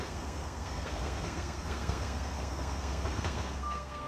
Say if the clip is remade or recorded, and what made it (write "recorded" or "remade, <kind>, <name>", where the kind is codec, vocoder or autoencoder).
remade, codec, SNAC